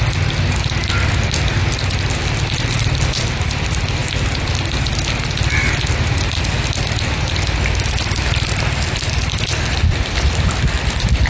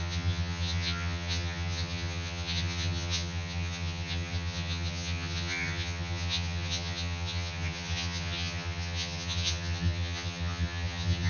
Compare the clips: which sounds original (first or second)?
first